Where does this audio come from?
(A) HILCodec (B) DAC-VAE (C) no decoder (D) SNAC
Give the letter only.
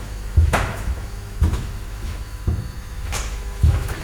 B